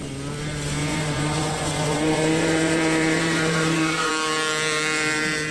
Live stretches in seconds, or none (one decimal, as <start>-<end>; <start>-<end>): 0.0-0.8; 4.1-5.5